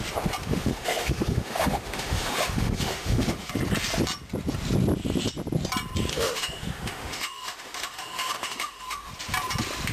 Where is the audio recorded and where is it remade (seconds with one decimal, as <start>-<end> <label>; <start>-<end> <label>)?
0.0-0.4 recorded; 0.4-3.5 remade; 3.5-6.1 recorded; 6.1-9.1 remade; 9.1-9.9 recorded

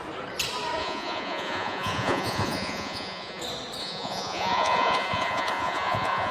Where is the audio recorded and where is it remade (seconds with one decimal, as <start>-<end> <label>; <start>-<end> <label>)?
0.0-0.8 recorded; 0.8-3.4 remade; 3.4-3.8 recorded; 3.8-6.3 remade